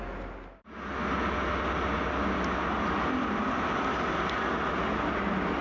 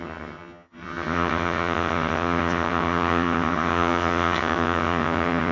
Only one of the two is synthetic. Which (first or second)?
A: second